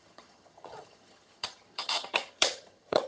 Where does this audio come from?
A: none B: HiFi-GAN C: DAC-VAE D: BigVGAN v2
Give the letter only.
B